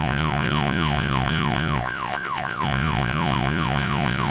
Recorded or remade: remade